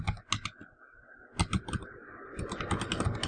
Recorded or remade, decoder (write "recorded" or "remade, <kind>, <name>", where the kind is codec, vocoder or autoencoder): recorded